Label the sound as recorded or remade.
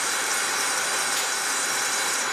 remade